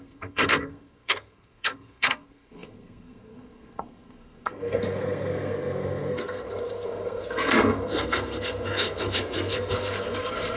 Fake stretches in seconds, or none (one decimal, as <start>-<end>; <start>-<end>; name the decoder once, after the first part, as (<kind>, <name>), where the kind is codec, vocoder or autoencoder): 0.0-10.6 (codec, SNAC)